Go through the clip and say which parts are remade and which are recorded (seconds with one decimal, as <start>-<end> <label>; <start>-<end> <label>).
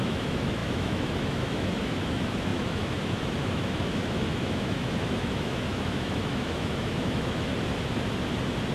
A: 0.0-7.5 remade; 7.5-8.7 recorded